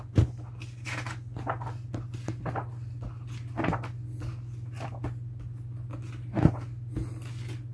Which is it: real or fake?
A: real